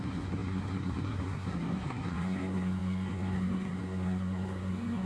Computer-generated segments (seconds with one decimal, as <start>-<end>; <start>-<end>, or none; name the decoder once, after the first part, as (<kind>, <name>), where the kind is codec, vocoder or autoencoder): 0.0-5.1 (codec, SNAC)